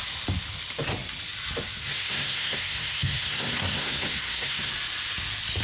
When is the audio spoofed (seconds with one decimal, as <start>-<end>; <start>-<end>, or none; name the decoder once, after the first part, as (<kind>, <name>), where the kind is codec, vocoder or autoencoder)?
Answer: 1.8-4.7 (codec, SNAC)